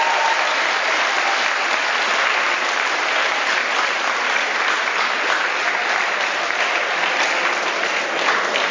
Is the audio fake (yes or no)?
yes